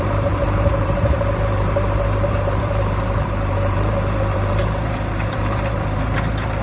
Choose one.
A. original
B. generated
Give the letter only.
B